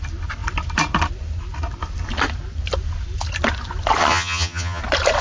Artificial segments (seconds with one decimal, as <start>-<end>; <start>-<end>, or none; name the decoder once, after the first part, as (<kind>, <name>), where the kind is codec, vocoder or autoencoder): 4.0-4.8 (vocoder, HiFi-GAN)